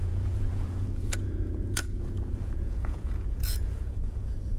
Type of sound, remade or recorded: remade